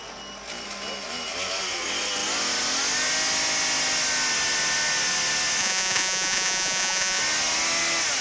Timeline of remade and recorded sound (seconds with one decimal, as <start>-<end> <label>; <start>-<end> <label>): 0.0-5.6 recorded; 5.6-7.2 remade; 7.2-8.2 recorded